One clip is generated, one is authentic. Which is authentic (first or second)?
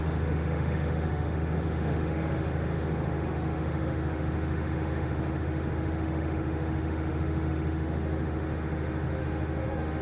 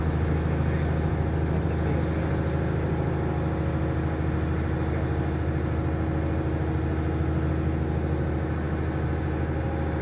second